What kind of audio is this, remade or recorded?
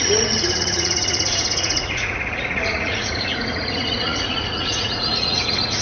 remade